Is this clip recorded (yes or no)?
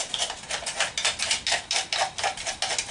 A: yes